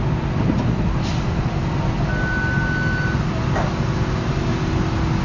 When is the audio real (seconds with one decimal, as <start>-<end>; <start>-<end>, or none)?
0.0-5.2